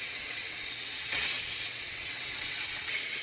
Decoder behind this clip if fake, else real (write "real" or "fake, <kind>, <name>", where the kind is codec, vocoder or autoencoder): fake, vocoder, WaveNeXt